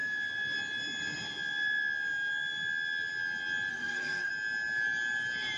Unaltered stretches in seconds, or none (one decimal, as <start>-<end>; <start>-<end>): 0.0-3.7; 4.3-5.6